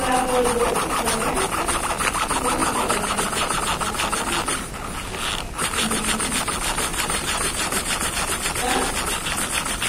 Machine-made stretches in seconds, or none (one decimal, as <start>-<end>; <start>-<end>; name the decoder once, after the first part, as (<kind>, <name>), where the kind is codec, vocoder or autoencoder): 2.6-3.6 (vocoder, BigVGAN v2); 6.9-8.2